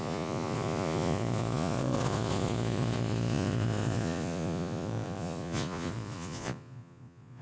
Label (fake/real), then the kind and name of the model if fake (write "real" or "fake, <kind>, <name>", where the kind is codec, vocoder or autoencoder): fake, vocoder, Vocos